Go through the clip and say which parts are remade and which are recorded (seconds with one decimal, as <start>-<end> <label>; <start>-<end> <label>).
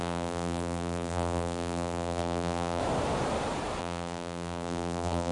0.0-2.8 remade; 2.8-3.8 recorded; 3.8-5.3 remade